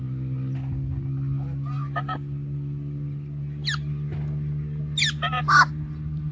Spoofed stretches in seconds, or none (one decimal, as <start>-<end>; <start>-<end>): none